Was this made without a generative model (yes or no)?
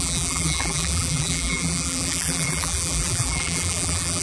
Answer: no